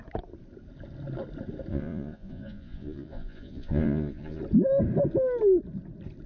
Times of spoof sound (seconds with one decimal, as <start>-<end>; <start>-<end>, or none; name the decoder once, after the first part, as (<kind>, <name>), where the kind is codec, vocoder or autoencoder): 1.7-4.4 (vocoder, Vocos)